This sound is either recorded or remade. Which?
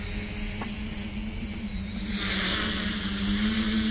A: recorded